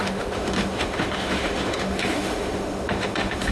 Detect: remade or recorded remade